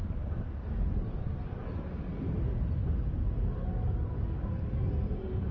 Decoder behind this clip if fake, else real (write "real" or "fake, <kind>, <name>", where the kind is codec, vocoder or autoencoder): real